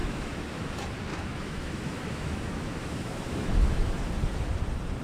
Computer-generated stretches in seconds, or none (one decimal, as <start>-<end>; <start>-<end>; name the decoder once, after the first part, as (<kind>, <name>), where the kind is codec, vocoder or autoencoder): 0.0-0.6 (autoencoder, DAC-VAE); 1.1-4.1